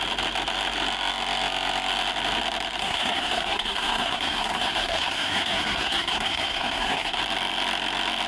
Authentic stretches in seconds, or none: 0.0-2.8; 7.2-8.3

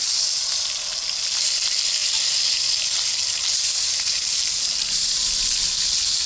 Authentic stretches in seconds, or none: 0.0-6.3

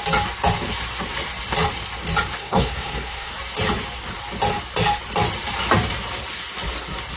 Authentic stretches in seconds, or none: 0.0-2.4; 3.3-7.2